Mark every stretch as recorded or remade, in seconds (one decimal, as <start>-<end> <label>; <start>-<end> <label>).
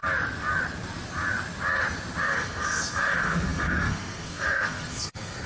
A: 0.0-2.2 recorded; 2.2-5.5 remade